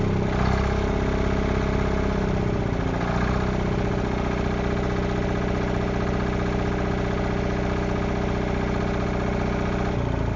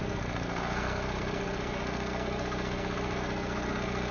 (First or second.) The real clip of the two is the first